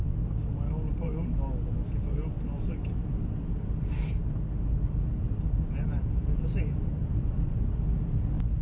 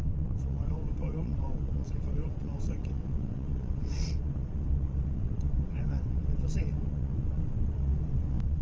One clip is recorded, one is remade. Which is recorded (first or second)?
first